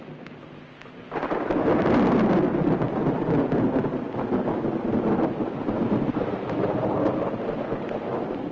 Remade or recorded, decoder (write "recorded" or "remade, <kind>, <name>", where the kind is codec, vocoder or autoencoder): recorded